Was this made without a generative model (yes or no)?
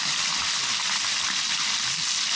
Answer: yes